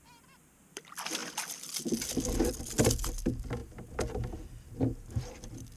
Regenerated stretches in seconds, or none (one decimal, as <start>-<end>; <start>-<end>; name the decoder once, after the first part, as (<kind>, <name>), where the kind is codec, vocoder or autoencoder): none